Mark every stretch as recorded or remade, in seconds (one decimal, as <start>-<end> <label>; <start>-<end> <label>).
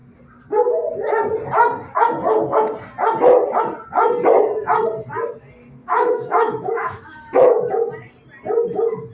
0.0-5.8 recorded; 5.8-7.7 remade; 7.7-9.1 recorded